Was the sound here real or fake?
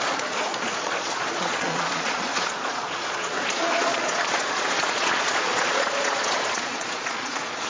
fake